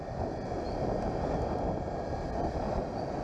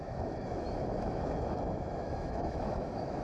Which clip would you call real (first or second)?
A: first